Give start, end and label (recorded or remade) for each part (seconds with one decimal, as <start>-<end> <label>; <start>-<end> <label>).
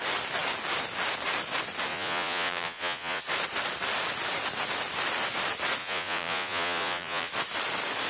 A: 0.0-1.9 recorded; 1.9-3.2 remade; 3.2-5.8 recorded; 5.8-7.3 remade; 7.3-8.1 recorded